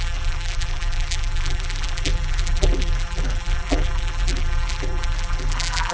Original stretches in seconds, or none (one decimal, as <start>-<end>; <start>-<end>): none